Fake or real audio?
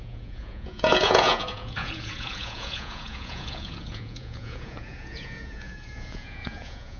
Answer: fake